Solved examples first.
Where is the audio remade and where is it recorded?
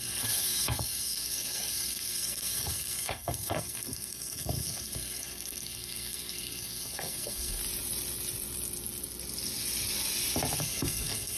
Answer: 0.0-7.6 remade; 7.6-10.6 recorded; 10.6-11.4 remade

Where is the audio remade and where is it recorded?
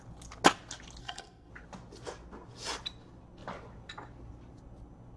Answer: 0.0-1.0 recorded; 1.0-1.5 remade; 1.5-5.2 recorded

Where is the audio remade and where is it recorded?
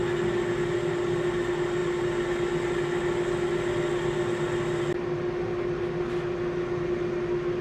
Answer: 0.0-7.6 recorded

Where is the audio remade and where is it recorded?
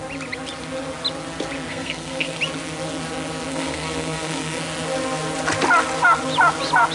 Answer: 0.0-1.7 recorded; 1.7-2.4 remade; 2.4-3.5 recorded; 3.5-4.6 remade; 4.6-6.9 recorded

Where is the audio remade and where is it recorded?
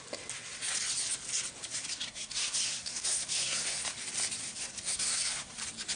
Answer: 0.0-1.6 recorded; 1.6-3.8 remade; 3.8-4.4 recorded; 4.4-5.6 remade; 5.6-6.0 recorded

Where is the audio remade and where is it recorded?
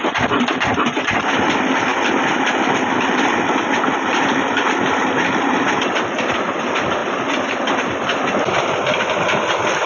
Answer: 0.0-9.9 recorded